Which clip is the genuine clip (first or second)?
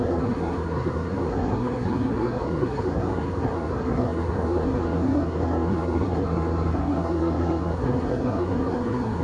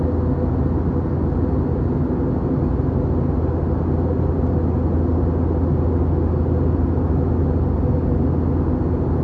second